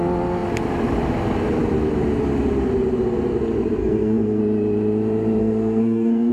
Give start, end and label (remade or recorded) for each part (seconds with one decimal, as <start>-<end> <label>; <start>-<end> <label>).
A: 0.0-3.8 recorded; 3.8-4.4 remade; 4.4-5.4 recorded; 5.4-6.3 remade